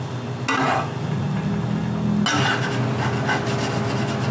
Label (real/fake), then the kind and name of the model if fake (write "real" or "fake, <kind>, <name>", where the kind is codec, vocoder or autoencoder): real